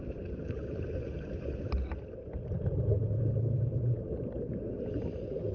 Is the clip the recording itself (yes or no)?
yes